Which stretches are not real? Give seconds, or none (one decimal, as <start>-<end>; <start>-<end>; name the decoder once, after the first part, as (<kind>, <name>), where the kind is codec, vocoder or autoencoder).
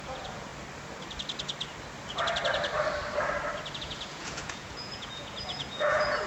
0.0-0.5 (vocoder, Vocos); 3.8-6.3